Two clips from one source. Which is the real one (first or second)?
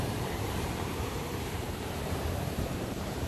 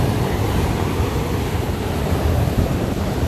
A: second